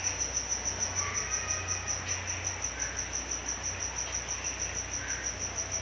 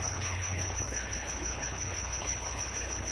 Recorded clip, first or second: first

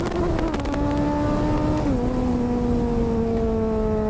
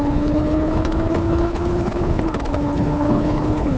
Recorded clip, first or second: first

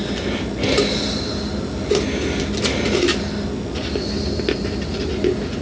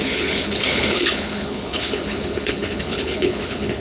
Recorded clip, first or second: first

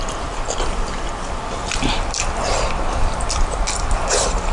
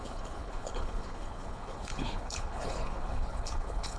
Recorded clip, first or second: first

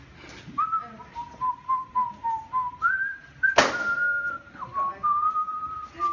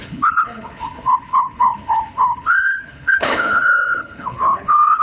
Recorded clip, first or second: first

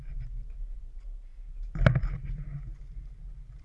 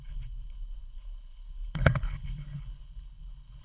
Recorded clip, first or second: first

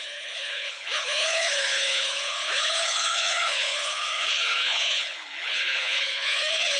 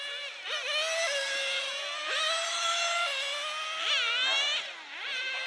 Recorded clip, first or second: second